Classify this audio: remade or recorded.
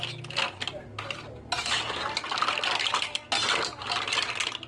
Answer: recorded